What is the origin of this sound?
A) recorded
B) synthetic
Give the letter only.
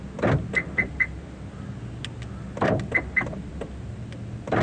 A